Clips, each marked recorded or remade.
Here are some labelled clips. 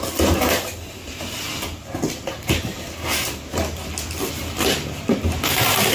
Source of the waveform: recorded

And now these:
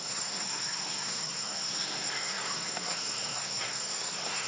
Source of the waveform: remade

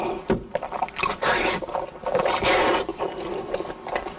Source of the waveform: recorded